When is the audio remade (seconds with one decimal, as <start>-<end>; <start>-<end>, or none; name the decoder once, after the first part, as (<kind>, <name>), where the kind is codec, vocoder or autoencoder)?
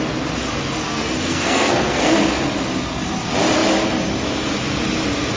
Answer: 0.8-2.4 (codec, SNAC)